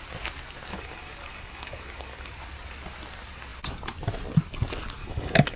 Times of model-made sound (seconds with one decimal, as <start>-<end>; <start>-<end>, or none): 0.7-2.3; 5.0-5.6